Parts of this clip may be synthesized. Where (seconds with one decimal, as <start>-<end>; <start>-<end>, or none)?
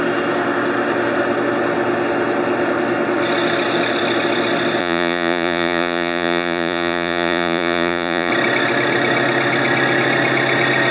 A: 4.8-8.3